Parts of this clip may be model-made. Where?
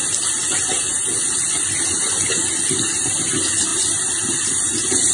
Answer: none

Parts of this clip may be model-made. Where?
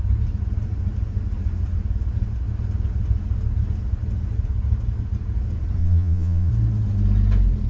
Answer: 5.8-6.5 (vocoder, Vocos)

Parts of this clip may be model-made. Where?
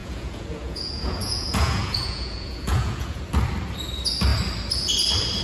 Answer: 0.0-3.2 (vocoder, Vocos)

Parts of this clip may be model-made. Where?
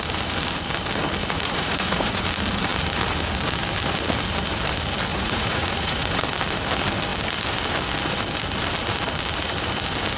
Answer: 1.2-2.2 (vocoder, Vocos); 5.1-6.2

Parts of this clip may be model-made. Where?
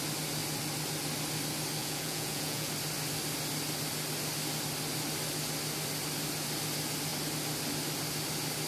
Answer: 1.8-2.7 (vocoder, Vocos)